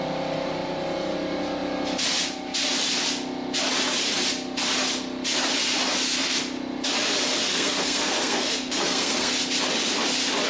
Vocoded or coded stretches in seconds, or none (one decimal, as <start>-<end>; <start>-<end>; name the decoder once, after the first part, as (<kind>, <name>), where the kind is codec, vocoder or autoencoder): 7.5-9.3 (codec, SNAC)